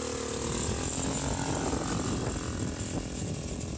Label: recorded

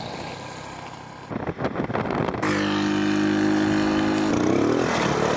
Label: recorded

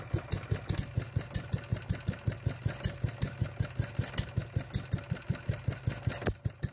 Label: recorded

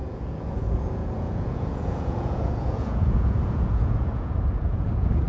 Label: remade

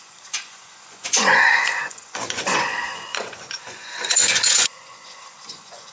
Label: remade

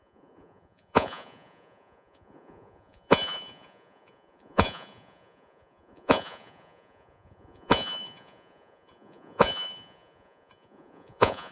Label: remade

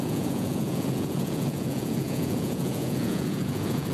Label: remade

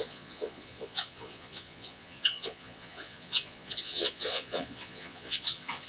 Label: remade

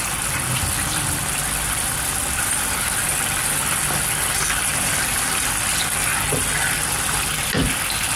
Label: recorded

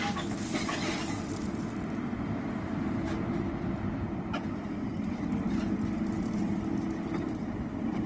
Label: recorded